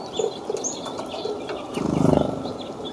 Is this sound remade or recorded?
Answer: recorded